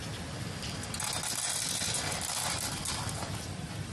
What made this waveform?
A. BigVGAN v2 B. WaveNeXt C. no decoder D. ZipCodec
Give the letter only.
C